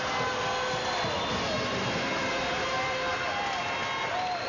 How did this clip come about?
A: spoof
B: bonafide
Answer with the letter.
B